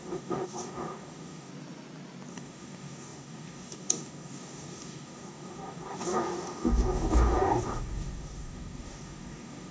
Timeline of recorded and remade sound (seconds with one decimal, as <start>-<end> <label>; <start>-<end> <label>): 0.0-1.5 remade; 1.5-2.3 recorded; 2.3-9.7 remade